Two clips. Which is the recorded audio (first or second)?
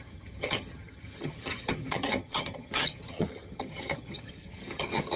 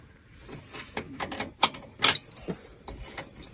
second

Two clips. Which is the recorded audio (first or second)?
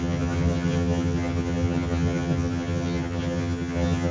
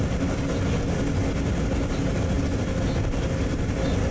second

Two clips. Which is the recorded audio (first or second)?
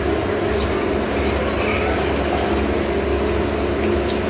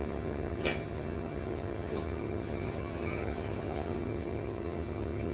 first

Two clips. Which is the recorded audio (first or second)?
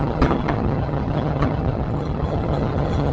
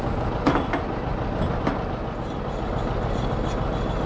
second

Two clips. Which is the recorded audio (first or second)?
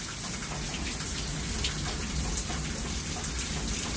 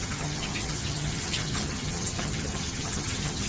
first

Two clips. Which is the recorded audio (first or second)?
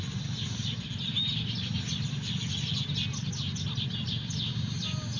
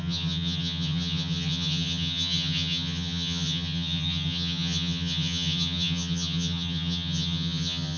first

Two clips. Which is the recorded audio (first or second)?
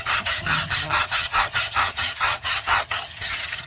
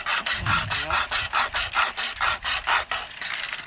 second